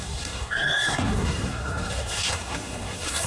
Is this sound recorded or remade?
remade